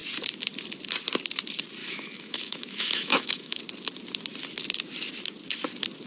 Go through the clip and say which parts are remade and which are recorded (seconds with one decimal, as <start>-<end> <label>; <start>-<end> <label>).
0.0-1.8 recorded; 1.8-3.6 remade; 3.6-6.1 recorded